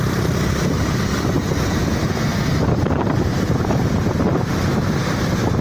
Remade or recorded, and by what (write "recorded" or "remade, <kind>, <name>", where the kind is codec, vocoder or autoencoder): remade, vocoder, BigVGAN v2